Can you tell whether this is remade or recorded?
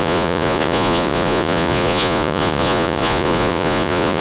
remade